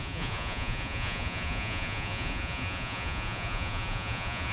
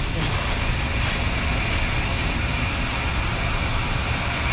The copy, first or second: first